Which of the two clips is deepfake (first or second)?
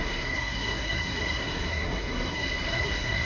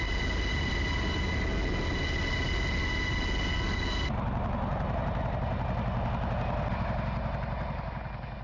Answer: first